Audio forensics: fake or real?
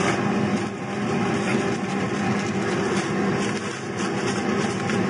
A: real